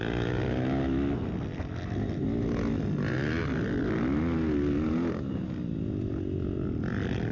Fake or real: real